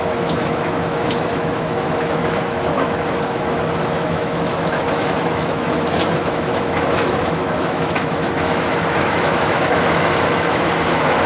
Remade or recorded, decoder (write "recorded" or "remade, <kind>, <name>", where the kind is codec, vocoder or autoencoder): remade, autoencoder, DAC-VAE